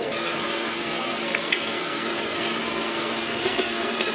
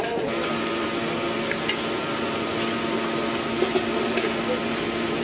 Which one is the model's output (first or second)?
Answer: first